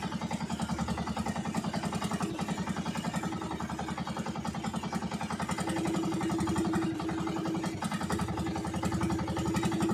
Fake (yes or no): no